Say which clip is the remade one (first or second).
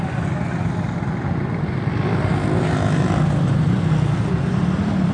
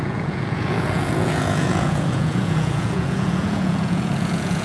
second